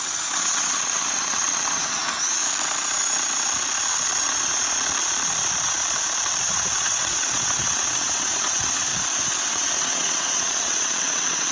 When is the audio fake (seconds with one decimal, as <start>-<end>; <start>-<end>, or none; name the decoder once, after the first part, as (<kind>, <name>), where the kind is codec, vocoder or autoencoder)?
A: 0.0-2.0 (vocoder, WaveNeXt); 6.4-8.9; 9.4-11.5